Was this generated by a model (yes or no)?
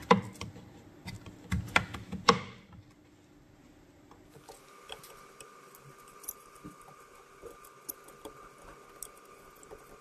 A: no